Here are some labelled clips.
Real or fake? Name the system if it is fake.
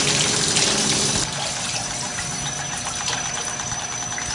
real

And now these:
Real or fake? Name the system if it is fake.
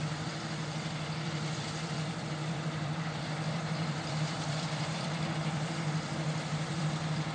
fake, vocoder, BigVGAN v2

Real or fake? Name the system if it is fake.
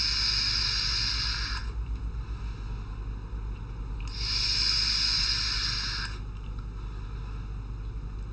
real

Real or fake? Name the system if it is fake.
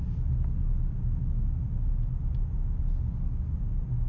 real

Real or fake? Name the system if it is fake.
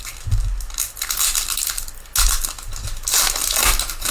real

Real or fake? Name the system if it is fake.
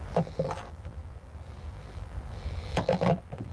fake, vocoder, BigVGAN v2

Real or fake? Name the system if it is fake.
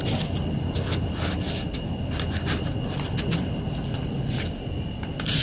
real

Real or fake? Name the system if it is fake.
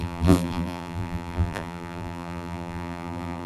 fake, vocoder, BigVGAN v2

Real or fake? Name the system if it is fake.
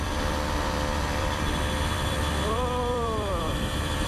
fake, vocoder, BigVGAN v2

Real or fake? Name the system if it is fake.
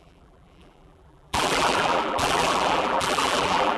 fake, vocoder, BigVGAN v2